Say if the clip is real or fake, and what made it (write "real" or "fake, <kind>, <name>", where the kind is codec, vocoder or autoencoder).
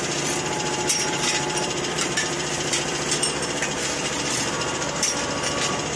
real